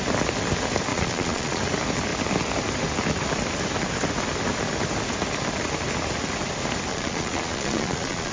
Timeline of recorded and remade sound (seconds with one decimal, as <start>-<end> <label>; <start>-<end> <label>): 0.0-0.9 recorded; 0.9-1.6 remade; 1.6-6.9 recorded; 6.9-8.3 remade

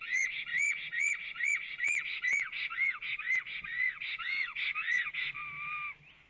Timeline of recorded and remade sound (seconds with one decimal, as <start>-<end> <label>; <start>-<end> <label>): 0.0-5.4 remade; 5.4-6.3 recorded

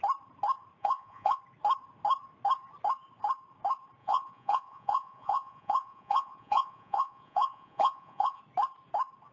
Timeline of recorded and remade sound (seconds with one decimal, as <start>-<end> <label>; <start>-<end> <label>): 0.0-0.8 recorded; 0.8-1.4 remade; 1.4-4.0 recorded; 4.0-8.4 remade; 8.4-9.3 recorded

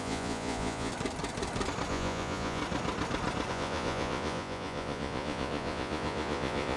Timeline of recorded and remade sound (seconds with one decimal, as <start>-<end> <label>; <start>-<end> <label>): 0.0-0.9 remade; 0.9-1.9 recorded; 1.9-2.6 remade; 2.6-3.5 recorded; 3.5-6.8 remade

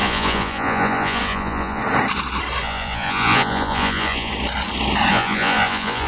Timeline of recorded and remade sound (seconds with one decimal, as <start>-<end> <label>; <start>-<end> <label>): 0.0-1.8 remade; 1.8-2.6 recorded; 2.6-4.3 remade; 4.3-5.1 recorded; 5.1-6.1 remade

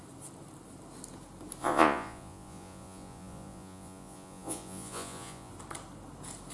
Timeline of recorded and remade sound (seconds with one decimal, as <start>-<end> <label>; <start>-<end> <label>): 0.0-1.6 recorded; 1.6-5.5 remade; 5.5-6.5 recorded

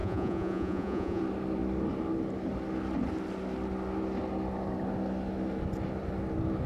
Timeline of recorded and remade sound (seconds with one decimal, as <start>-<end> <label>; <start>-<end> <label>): 0.0-1.2 remade; 1.2-6.7 recorded